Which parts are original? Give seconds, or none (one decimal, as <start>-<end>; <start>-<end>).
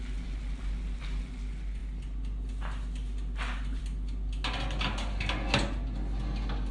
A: 0.0-6.7